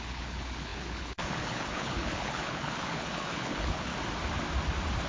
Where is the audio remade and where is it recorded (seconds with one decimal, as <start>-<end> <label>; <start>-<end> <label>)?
0.0-3.9 remade; 3.9-5.1 recorded